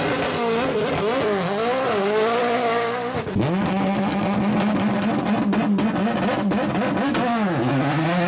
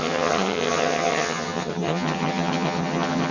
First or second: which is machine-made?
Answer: second